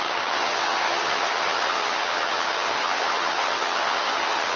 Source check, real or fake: fake